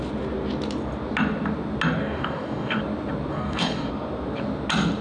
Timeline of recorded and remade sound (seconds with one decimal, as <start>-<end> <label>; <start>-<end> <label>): 0.0-2.0 recorded; 2.0-2.8 remade; 2.8-3.3 recorded; 3.3-3.9 remade; 3.9-5.0 recorded